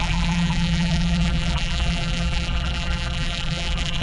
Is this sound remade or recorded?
remade